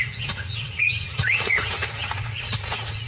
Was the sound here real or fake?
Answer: fake